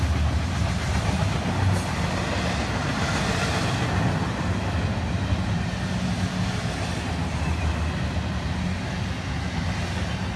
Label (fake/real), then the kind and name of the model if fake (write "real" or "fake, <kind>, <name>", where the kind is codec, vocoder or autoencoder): real